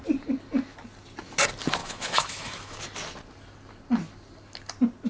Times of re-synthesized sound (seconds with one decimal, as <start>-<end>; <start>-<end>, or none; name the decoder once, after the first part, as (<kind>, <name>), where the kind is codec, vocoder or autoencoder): 1.8-2.8 (autoencoder, DAC-VAE)